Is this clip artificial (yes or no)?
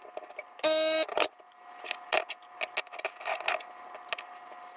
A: no